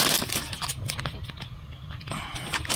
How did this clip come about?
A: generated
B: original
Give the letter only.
B